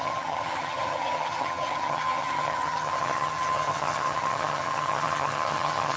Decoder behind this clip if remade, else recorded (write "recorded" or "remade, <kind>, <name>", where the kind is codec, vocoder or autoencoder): remade, vocoder, HiFi-GAN